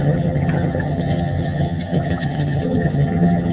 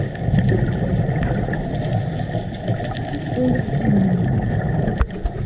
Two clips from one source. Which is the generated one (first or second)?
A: first